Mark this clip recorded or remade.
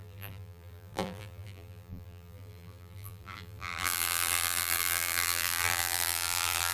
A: remade